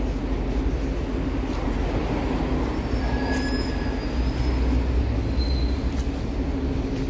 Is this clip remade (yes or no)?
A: no